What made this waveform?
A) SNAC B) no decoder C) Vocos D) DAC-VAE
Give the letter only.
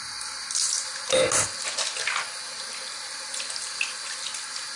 B